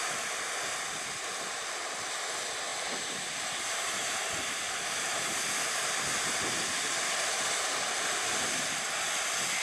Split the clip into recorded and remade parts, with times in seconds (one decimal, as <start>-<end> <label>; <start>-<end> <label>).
0.0-2.7 recorded; 2.7-6.4 remade; 6.4-9.6 recorded